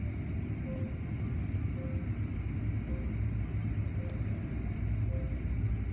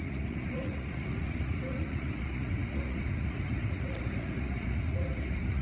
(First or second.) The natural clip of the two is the first